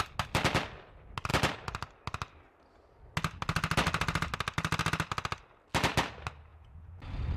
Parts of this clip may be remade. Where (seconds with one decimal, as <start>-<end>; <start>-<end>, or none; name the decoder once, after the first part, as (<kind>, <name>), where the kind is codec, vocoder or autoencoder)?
6.5-7.0 (vocoder, Vocos)